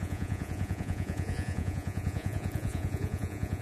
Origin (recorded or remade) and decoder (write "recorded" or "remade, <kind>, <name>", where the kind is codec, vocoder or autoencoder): remade, vocoder, Vocos